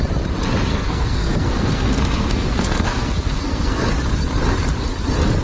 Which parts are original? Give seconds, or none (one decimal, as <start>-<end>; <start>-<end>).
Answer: 0.0-0.7; 3.9-5.4